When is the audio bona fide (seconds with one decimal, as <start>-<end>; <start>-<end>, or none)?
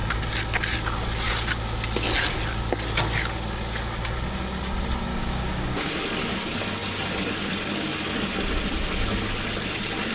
0.0-5.1; 5.9-10.1